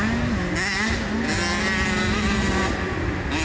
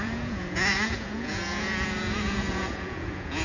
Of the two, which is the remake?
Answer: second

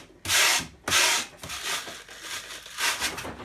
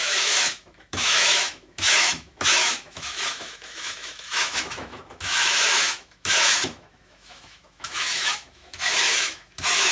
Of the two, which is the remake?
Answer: second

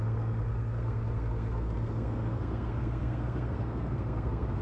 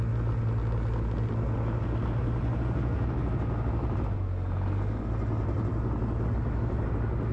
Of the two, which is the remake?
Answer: first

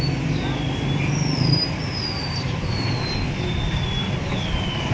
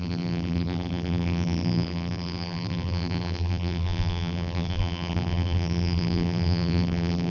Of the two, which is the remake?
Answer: second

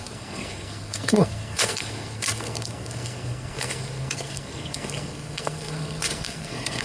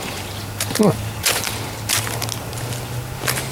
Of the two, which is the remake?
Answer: first